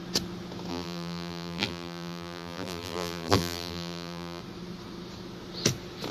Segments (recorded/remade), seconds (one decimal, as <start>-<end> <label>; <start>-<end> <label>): 0.0-0.7 recorded; 0.7-4.4 remade; 4.4-6.1 recorded